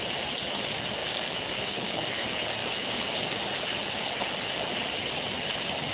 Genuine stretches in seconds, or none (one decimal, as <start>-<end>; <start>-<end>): 0.0-1.0; 2.0-2.6; 3.4-5.9